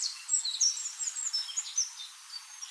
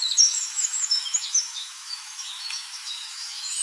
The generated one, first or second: second